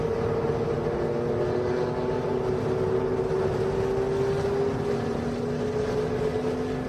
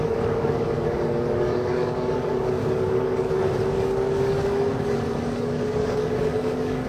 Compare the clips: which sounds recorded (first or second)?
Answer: first